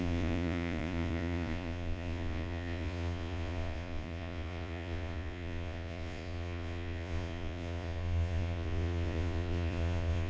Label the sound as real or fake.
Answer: fake